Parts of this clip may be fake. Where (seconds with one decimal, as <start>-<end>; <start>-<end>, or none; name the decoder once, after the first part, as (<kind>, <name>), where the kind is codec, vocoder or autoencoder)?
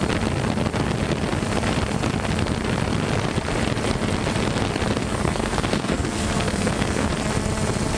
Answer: 5.0-7.1 (codec, SNAC)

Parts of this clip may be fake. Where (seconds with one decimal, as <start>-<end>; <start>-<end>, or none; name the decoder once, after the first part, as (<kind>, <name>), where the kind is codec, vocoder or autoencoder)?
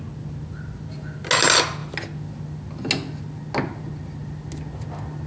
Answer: none